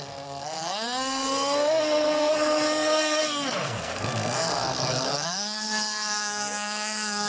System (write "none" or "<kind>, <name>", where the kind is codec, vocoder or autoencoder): codec, SNAC